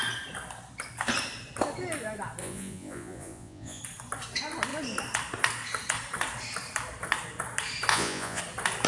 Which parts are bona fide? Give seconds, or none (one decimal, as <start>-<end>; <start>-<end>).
0.0-2.4; 3.8-7.9; 8.4-8.9